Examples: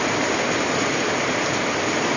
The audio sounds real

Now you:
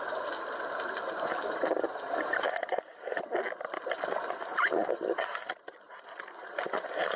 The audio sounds real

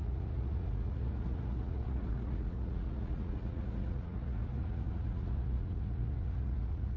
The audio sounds fake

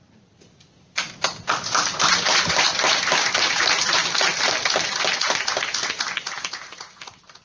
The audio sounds real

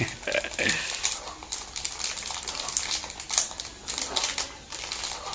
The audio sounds real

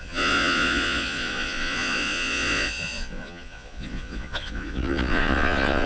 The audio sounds fake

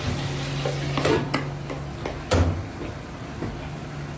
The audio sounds real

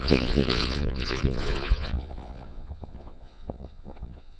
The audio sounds fake